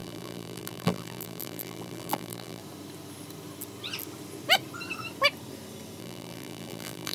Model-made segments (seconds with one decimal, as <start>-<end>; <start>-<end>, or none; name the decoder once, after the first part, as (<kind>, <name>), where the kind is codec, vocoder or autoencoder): 0.0-2.6 (vocoder, BigVGAN v2); 6.0-7.1